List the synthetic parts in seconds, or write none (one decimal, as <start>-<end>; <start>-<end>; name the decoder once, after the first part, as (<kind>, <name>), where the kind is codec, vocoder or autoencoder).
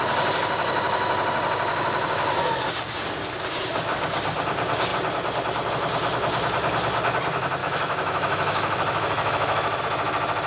7.6-9.8 (autoencoder, DAC-VAE)